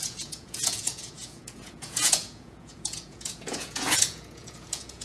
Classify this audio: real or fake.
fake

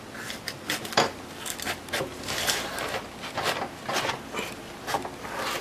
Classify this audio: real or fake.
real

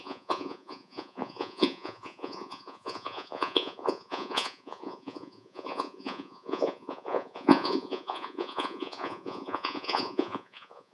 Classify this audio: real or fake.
fake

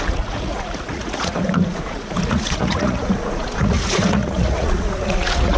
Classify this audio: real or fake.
fake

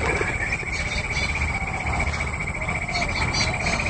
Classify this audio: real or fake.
real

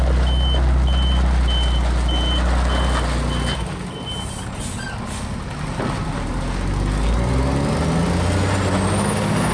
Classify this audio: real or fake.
real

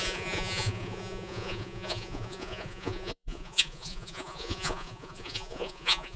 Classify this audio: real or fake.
fake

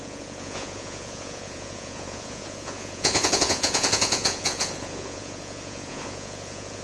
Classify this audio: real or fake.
fake